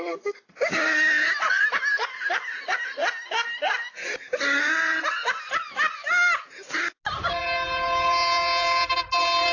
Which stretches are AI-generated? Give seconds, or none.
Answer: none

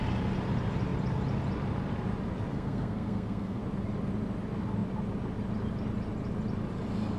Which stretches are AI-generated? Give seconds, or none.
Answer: 2.5-3.6 (codec, SNAC)

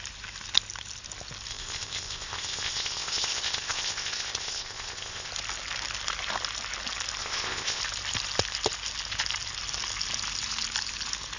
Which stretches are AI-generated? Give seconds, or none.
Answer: 1.5-5.3 (codec, ZipCodec); 7.2-7.8

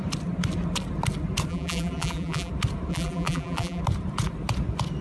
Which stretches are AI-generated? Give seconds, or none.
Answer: 1.5-2.5 (vocoder, BigVGAN v2); 2.9-3.8

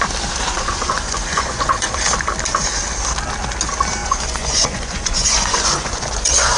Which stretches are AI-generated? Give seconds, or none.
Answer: 0.4-2.0 (vocoder, Vocos); 4.0-6.6

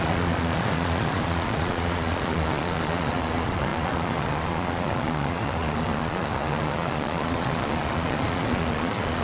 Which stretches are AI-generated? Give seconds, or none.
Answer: 0.0-9.2 (vocoder, Vocos)

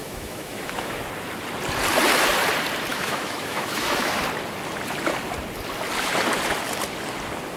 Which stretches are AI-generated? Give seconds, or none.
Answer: 0.0-1.0 (autoencoder, DAC-VAE); 2.9-4.2

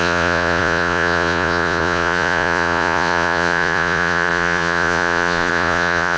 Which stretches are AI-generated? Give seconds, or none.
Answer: 0.0-6.2 (vocoder, Vocos)